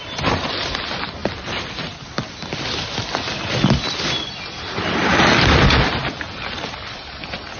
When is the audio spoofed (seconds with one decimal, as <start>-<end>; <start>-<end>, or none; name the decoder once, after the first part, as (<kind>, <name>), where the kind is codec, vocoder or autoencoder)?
none